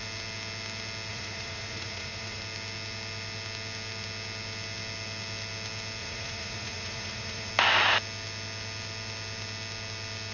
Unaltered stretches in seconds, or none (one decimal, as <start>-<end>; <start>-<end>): 0.0-1.1; 2.4-6.0; 7.5-10.3